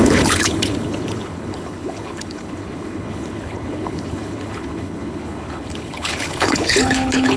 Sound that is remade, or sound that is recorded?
remade